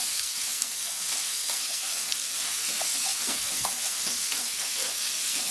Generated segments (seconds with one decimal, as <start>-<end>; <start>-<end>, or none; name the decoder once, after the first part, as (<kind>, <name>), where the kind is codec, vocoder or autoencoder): 0.0-5.5 (codec, SNAC)